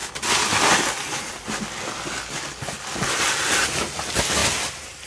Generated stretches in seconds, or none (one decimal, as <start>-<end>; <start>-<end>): none